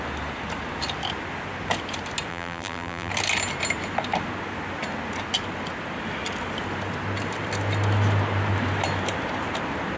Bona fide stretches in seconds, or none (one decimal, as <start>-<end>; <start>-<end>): 0.0-2.3; 3.1-10.0